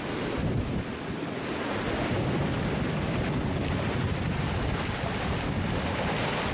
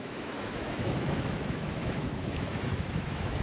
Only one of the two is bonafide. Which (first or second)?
first